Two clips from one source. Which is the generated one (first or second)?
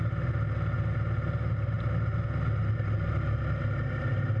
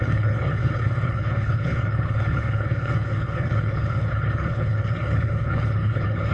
second